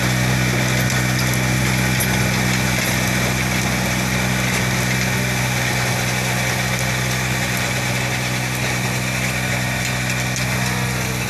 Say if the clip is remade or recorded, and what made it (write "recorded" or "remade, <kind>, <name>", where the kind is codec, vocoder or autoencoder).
recorded